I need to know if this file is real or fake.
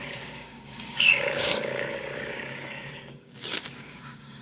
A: fake